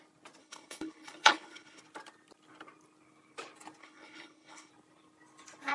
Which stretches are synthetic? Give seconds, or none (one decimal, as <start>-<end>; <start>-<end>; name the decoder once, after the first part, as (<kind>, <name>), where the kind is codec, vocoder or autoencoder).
0.4-1.8 (codec, HILCodec); 3.8-4.7